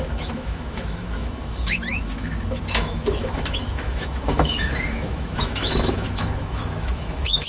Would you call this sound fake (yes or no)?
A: yes